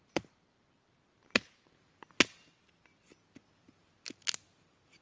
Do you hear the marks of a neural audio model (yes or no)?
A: no